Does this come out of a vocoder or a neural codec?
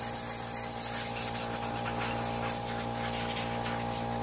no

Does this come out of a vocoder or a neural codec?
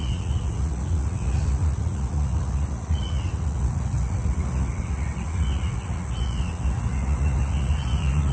yes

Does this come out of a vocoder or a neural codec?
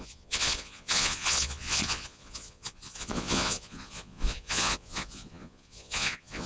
yes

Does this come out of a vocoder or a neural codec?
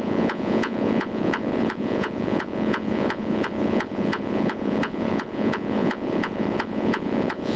yes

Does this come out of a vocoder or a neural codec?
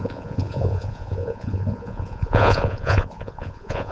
yes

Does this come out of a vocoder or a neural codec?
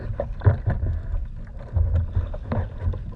no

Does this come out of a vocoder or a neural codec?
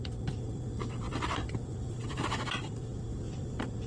no